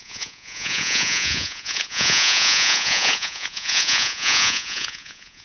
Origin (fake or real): fake